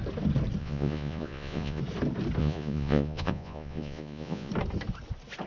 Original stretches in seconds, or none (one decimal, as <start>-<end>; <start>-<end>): 0.0-0.6; 1.8-2.4; 4.5-5.5